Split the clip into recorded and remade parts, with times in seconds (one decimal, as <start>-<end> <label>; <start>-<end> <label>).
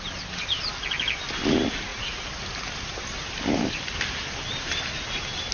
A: 0.0-5.5 recorded